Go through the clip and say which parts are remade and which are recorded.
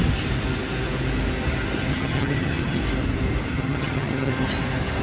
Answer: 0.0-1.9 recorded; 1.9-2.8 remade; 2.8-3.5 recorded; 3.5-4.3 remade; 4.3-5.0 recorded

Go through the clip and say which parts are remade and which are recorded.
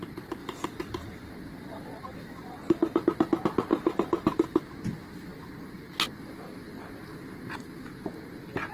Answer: 0.0-0.4 recorded; 0.4-1.3 remade; 1.3-2.1 recorded; 2.1-3.0 remade; 3.0-3.7 recorded; 3.7-4.6 remade; 4.6-8.7 recorded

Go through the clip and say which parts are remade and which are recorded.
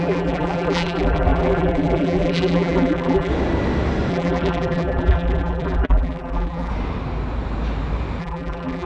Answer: 0.0-3.3 remade; 3.3-4.1 recorded; 4.1-6.7 remade; 6.7-8.2 recorded; 8.2-8.9 remade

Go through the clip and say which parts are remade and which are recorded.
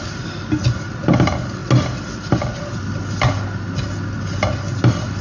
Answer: 0.0-5.2 recorded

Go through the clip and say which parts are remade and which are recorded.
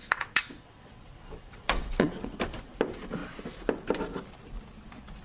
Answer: 0.0-2.4 remade; 2.4-5.2 recorded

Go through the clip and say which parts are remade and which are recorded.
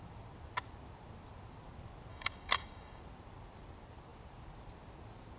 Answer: 0.0-2.1 recorded; 2.1-3.0 remade; 3.0-5.4 recorded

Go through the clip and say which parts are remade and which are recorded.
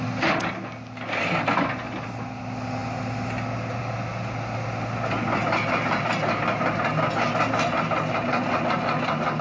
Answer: 0.0-9.4 recorded